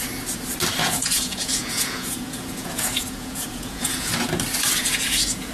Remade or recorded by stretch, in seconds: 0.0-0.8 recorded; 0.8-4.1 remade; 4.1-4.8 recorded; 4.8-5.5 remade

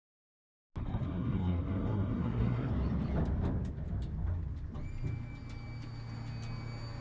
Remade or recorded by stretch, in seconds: 0.0-0.8 recorded; 0.8-2.7 remade; 2.7-7.0 recorded

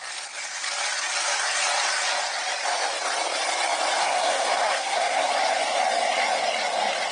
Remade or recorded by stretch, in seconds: 0.0-4.0 recorded; 4.0-5.3 remade; 5.3-7.1 recorded

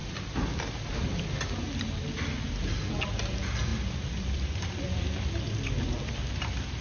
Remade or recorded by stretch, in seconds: 0.0-2.5 remade; 2.5-3.7 recorded; 3.7-5.3 remade; 5.3-6.8 recorded

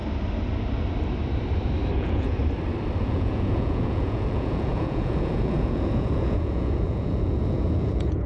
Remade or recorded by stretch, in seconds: 0.0-2.0 recorded; 2.0-2.4 remade; 2.4-3.0 recorded; 3.0-8.3 remade